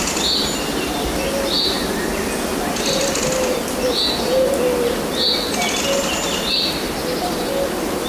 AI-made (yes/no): no